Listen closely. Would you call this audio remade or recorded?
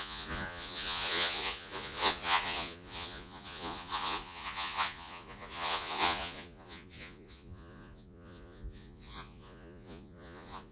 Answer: remade